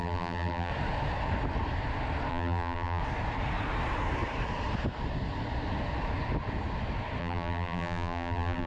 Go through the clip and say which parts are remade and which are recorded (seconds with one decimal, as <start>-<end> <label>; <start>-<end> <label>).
0.0-0.7 remade; 0.7-2.3 recorded; 2.3-3.0 remade; 3.0-7.2 recorded; 7.2-8.7 remade